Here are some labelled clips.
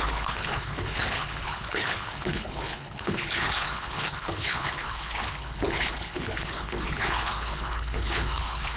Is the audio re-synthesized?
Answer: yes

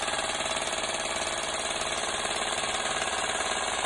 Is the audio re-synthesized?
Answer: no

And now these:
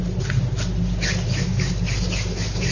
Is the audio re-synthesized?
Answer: no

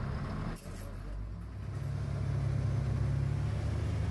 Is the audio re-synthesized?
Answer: no